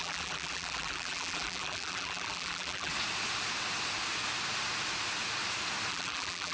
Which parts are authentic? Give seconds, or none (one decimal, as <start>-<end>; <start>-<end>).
2.9-5.9